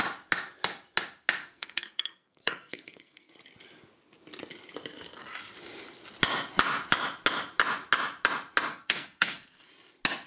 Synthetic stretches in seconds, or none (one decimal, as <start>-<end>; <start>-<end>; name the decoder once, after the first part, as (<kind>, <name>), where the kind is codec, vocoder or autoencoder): 1.4-3.3 (codec, SNAC); 8.7-9.7